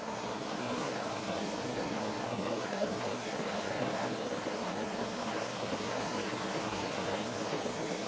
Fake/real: fake